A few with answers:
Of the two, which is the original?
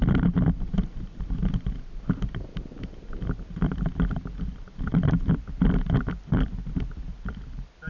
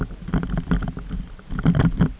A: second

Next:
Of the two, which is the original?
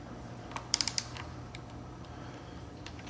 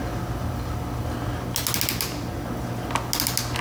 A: second